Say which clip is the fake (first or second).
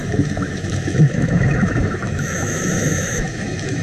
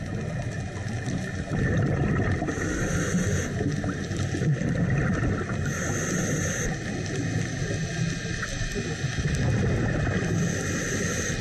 first